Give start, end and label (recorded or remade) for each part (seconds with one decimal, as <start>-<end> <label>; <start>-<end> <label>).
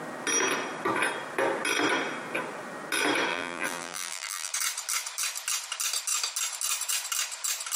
0.0-3.3 recorded; 3.3-4.5 remade; 4.5-7.8 recorded